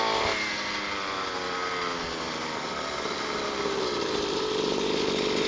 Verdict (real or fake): real